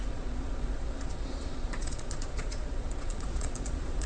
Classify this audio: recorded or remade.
remade